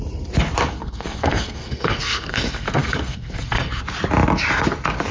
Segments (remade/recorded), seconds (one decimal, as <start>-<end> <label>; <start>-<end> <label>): 0.0-0.7 recorded; 0.7-3.8 remade; 3.8-5.1 recorded